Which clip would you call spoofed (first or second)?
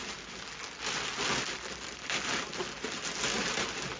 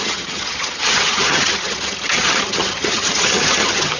second